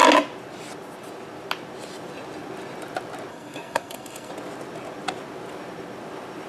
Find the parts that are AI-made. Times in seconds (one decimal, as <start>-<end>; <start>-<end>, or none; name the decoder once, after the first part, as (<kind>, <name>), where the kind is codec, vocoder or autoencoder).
3.3-4.3 (codec, SNAC)

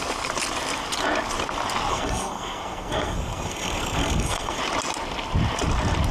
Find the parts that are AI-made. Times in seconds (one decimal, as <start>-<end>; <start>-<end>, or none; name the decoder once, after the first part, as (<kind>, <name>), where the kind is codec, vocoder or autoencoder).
1.9-4.6 (codec, SNAC)

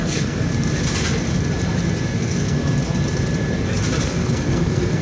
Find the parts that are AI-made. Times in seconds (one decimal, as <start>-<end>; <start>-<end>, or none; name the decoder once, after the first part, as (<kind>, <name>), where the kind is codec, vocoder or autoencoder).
0.0-0.5 (codec, SNAC); 2.2-2.6; 4.0-5.0